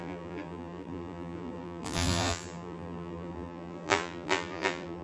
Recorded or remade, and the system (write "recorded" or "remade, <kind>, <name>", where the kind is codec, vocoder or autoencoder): remade, vocoder, BigVGAN v2